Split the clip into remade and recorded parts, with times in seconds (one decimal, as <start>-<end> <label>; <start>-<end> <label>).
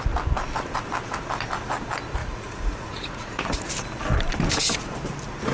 0.0-2.2 recorded; 2.2-3.7 remade; 3.7-5.5 recorded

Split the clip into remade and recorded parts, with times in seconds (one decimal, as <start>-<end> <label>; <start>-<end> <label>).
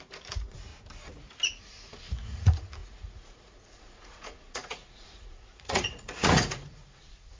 0.0-0.7 remade; 0.7-1.6 recorded; 1.6-7.4 remade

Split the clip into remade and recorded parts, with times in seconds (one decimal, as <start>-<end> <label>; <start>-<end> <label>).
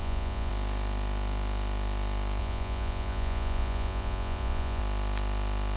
0.0-0.5 remade; 0.5-2.4 recorded; 2.4-4.8 remade; 4.8-5.8 recorded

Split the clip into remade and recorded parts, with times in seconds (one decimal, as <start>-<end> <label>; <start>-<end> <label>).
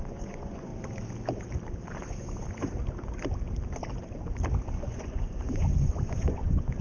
0.0-0.7 remade; 0.7-4.8 recorded; 4.8-6.8 remade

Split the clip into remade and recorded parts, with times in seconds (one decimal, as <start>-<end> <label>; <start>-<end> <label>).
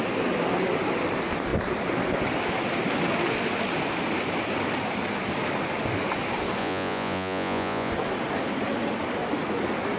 0.0-6.6 recorded; 6.6-7.9 remade; 7.9-10.0 recorded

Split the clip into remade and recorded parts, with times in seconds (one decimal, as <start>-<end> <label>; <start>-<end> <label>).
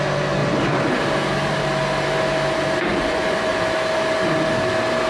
0.0-2.9 recorded; 2.9-3.5 remade; 3.5-5.1 recorded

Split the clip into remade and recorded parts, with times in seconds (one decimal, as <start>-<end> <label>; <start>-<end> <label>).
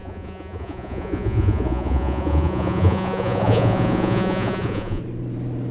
0.0-5.0 remade; 5.0-5.7 recorded